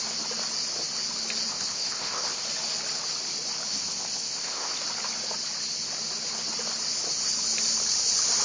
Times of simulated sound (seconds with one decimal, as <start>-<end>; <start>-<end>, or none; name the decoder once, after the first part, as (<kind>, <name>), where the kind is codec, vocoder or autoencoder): 1.5-2.4 (codec, ZipCodec); 3.7-4.7